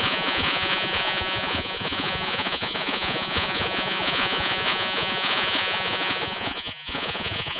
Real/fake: fake